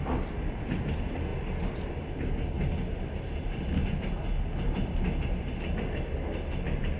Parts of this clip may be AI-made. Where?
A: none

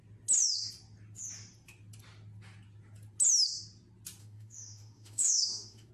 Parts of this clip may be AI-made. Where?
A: 4.2-5.9

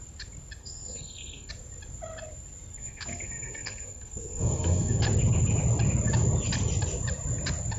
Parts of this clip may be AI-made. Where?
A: 0.6-1.5; 2.7-5.0